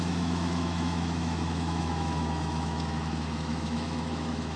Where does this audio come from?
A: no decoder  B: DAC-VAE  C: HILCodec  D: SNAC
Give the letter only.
B